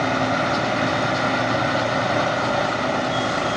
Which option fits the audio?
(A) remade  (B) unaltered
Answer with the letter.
B